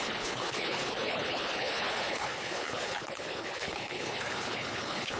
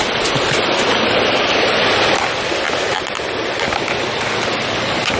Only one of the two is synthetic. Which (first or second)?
first